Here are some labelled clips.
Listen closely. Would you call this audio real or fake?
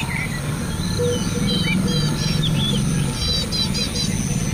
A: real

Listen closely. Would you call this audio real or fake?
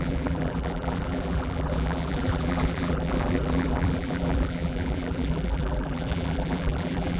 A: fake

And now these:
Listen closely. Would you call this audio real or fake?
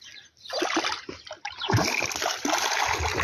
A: real